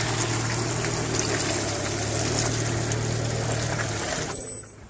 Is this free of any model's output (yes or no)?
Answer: yes